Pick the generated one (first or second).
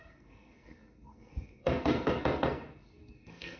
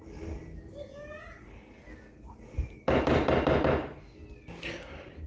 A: first